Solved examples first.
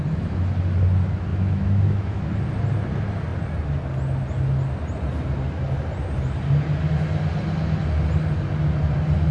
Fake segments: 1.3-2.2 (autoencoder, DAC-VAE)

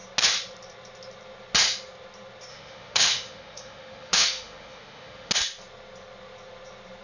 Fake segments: 2.5-5.3 (autoencoder, DAC-VAE)